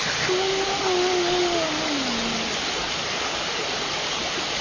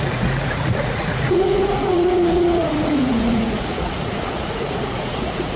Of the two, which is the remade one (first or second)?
second